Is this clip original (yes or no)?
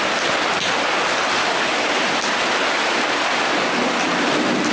yes